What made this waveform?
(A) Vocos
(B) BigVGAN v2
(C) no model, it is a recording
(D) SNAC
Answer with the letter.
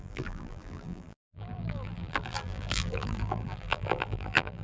B